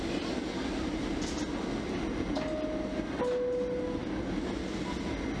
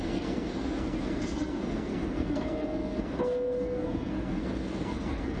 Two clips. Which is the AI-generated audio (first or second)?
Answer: second